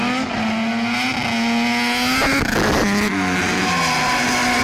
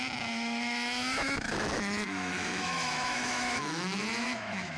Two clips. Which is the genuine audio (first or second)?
first